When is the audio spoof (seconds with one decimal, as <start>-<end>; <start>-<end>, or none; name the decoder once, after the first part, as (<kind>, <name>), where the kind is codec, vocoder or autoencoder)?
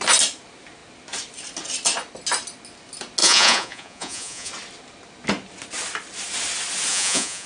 3.2-4.5 (vocoder, Vocos); 6.9-7.5